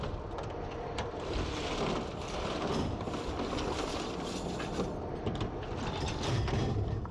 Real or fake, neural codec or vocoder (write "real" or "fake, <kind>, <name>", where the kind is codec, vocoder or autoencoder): real